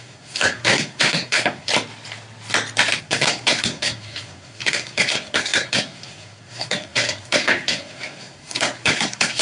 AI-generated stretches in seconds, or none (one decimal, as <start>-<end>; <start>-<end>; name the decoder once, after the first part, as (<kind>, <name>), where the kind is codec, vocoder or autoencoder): 0.0-1.7 (codec, SNAC); 3.0-9.4